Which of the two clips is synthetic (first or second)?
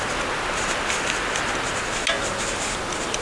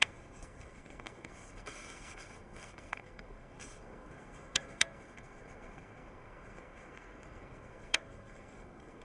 second